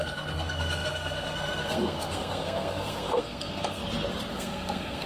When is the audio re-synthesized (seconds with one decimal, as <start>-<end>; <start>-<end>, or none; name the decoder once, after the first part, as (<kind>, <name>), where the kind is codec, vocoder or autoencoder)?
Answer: 0.0-3.8 (codec, SNAC); 4.3-5.1